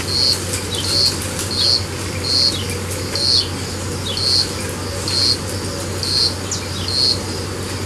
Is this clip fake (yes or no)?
no